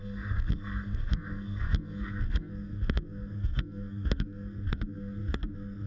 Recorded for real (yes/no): no